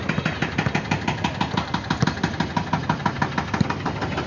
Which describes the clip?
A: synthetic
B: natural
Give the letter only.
B